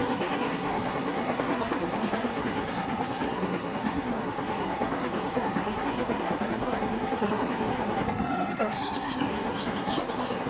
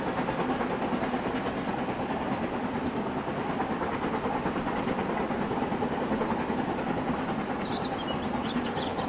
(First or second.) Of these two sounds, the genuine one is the second